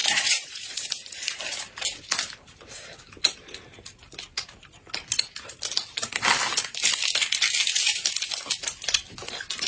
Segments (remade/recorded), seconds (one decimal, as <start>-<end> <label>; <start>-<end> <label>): 0.0-1.4 remade; 1.4-9.7 recorded